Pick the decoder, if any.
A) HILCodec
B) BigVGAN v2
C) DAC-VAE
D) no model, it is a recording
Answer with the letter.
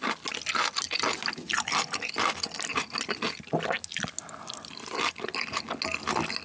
D